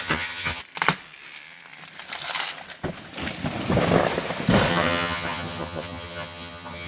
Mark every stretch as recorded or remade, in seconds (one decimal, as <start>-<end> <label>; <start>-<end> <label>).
0.0-0.6 remade; 0.6-4.7 recorded; 4.7-6.9 remade